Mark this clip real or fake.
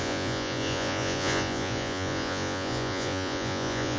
fake